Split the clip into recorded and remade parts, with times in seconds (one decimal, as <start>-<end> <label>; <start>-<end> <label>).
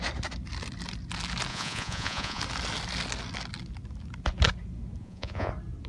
0.0-1.5 recorded; 1.5-2.4 remade; 2.4-5.0 recorded; 5.0-5.5 remade; 5.5-5.9 recorded